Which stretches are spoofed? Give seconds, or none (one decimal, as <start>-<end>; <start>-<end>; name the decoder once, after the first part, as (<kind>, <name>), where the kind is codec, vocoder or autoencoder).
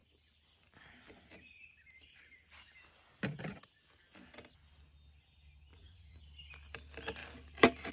5.7-6.2 (vocoder, Vocos)